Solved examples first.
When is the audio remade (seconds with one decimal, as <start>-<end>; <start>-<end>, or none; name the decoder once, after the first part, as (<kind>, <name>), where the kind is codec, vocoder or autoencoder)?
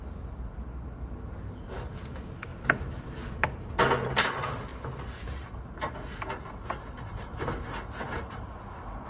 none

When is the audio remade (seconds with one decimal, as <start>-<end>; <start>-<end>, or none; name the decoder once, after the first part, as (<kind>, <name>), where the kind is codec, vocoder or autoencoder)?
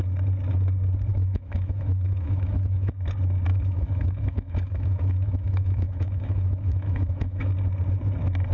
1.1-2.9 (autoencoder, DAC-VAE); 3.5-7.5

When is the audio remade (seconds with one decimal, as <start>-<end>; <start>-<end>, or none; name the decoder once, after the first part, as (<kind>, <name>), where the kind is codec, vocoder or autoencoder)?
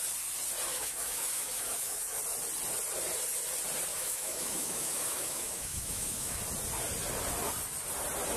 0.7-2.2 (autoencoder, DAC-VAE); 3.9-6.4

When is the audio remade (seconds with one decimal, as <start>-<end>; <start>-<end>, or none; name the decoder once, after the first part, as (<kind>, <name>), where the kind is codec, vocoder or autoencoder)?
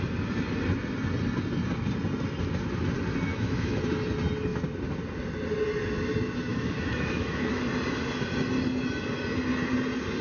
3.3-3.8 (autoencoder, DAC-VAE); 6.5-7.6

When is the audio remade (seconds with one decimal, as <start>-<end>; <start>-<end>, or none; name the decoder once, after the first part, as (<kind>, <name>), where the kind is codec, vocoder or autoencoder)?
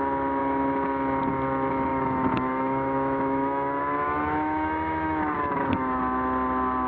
1.9-6.0 (autoencoder, DAC-VAE)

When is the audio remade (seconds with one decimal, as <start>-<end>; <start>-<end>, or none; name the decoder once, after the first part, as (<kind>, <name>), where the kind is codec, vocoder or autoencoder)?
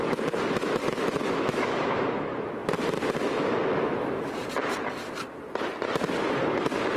0.8-2.7 (autoencoder, DAC-VAE); 3.3-4.3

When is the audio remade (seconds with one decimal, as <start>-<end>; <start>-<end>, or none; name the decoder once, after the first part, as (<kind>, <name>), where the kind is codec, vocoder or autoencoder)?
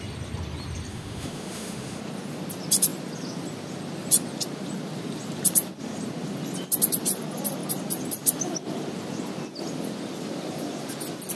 0.9-2.0 (autoencoder, DAC-VAE)